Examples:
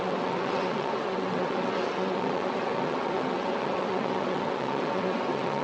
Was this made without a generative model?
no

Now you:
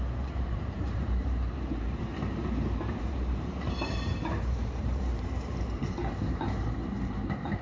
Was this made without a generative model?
no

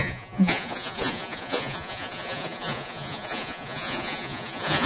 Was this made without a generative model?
no